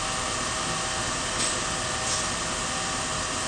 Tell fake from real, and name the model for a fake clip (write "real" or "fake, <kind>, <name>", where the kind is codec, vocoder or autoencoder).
real